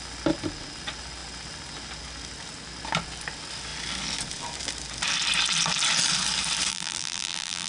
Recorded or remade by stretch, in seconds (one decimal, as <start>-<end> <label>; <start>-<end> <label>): 0.0-6.7 recorded; 6.7-7.7 remade